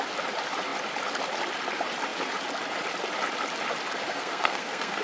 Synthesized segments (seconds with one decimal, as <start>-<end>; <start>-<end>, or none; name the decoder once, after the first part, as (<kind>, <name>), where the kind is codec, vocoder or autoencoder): 4.1-5.0 (codec, SNAC)